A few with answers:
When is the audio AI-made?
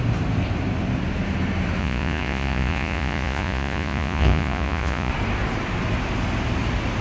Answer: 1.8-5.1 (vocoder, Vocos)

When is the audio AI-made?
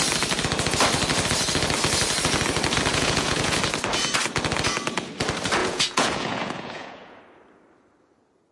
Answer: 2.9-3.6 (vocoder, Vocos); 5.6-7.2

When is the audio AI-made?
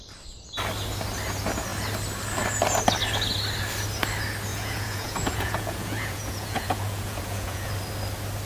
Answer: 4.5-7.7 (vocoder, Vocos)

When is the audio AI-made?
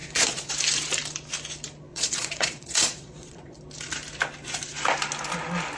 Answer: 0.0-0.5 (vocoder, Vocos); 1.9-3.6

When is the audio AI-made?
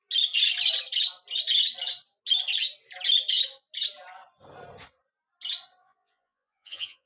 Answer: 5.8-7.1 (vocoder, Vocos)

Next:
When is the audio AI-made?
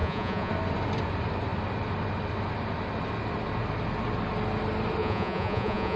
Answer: 0.0-0.5 (vocoder, Vocos); 5.0-6.0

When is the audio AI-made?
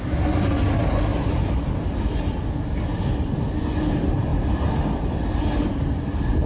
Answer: none